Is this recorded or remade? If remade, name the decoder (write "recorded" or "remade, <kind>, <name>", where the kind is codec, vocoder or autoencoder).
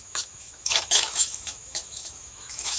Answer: remade, autoencoder, DAC-VAE